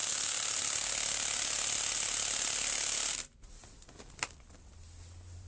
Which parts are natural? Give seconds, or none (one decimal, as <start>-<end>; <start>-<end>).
0.0-5.5